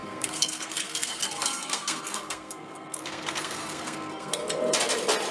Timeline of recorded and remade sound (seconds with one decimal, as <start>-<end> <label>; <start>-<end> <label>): 0.0-4.4 remade; 4.4-5.3 recorded